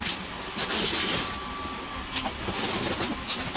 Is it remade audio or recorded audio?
recorded